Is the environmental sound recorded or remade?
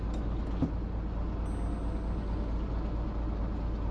recorded